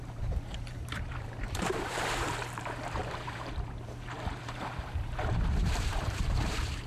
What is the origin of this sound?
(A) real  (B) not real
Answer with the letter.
B